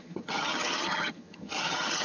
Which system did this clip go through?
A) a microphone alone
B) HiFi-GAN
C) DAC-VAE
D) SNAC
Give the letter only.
B